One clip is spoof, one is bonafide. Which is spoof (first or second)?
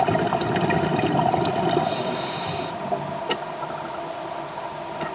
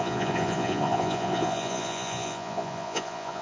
second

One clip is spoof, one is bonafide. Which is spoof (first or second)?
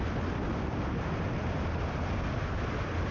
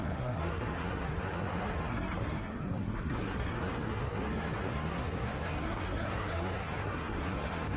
second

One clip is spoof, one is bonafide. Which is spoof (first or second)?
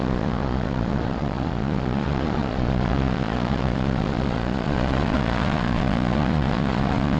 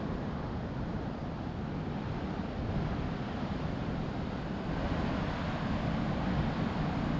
first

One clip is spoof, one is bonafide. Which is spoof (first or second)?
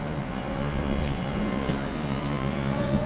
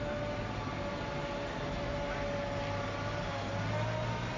first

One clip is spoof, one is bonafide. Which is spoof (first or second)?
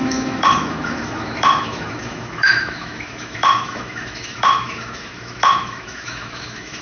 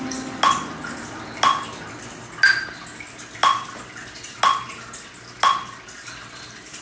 first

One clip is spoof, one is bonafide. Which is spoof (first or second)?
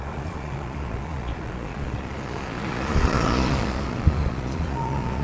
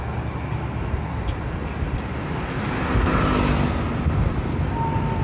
first